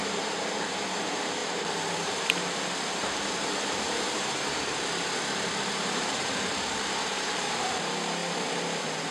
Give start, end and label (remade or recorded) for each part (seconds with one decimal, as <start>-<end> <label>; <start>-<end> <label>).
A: 0.0-1.4 remade; 1.4-3.1 recorded; 3.1-8.2 remade; 8.2-9.1 recorded